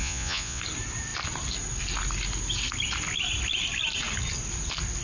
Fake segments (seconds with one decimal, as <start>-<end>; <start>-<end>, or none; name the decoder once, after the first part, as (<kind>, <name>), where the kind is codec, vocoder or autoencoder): 0.0-0.6 (vocoder, Vocos)